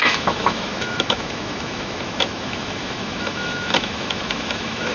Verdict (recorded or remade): remade